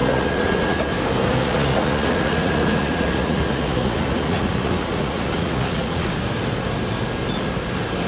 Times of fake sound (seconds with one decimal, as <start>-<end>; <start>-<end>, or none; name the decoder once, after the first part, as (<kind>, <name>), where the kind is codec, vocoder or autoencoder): 0.0-0.9 (vocoder, Vocos); 1.4-6.1